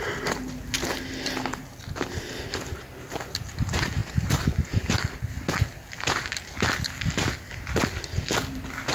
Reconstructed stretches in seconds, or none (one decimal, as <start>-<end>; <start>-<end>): none

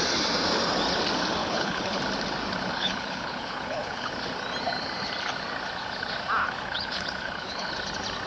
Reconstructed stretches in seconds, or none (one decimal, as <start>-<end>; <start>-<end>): 1.4-2.0; 2.7-4.1; 6.4-7.7